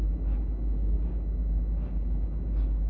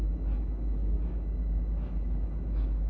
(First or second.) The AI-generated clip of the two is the second